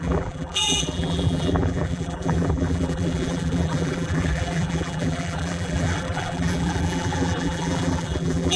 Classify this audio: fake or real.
fake